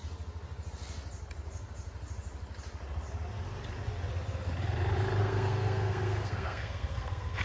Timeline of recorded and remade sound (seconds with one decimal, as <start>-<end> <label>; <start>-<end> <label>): 0.0-5.2 recorded; 5.2-7.4 remade